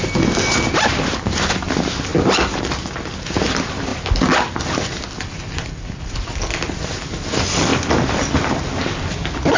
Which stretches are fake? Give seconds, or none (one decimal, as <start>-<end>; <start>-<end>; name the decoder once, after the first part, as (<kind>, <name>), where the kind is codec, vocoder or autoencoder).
none